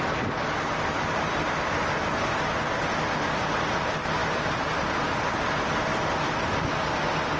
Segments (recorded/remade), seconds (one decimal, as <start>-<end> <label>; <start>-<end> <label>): 0.0-7.4 recorded